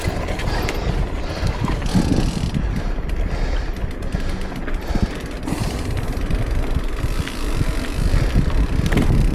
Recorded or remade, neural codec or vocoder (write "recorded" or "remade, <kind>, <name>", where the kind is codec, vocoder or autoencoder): recorded